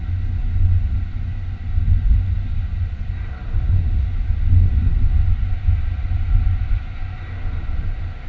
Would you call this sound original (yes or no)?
yes